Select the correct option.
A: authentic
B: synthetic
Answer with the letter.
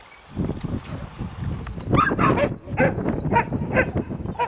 A